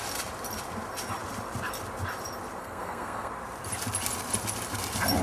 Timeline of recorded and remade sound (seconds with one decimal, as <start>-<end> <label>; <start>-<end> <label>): 0.0-2.6 recorded; 2.6-3.3 remade; 3.3-5.2 recorded